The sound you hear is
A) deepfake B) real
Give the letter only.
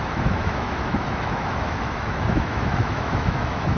A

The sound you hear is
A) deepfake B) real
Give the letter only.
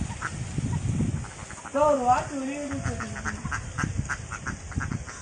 B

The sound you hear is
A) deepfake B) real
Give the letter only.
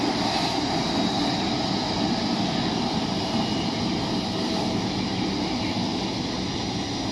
B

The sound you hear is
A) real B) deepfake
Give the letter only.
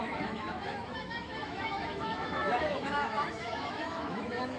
B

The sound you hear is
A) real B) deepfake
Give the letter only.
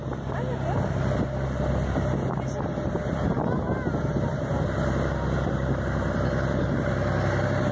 A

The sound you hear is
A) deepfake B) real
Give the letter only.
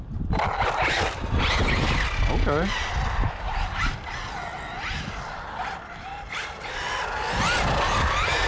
B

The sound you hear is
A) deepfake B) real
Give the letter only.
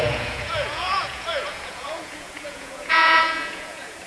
A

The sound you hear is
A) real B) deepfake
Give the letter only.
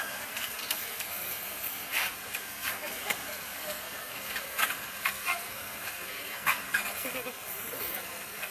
B